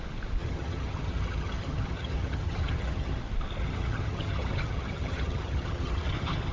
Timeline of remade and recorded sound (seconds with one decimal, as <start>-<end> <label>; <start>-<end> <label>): 0.0-0.4 recorded; 0.4-3.2 remade; 3.2-3.6 recorded; 3.6-6.5 remade